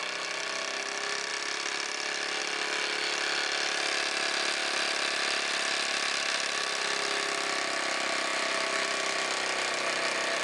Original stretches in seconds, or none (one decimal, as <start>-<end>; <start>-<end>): 0.0-1.3; 2.4-4.6; 6.8-8.3; 9.0-10.4